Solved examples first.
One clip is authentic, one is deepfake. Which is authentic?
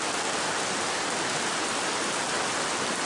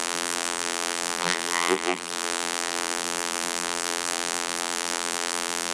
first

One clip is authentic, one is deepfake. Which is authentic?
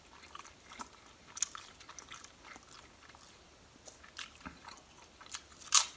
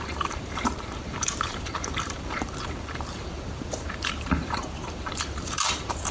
first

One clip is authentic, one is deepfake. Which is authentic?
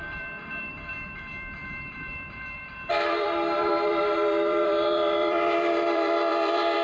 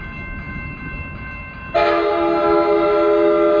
second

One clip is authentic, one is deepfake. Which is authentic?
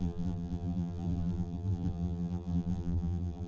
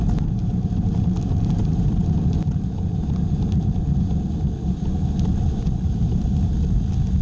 second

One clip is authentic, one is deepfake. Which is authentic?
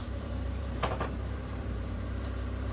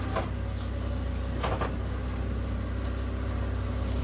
second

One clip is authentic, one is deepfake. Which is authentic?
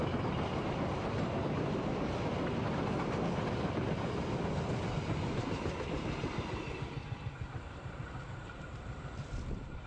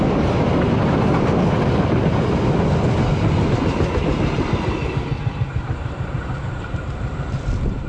second